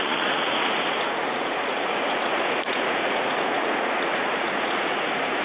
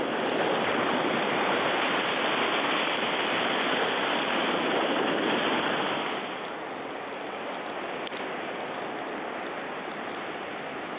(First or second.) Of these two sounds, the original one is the second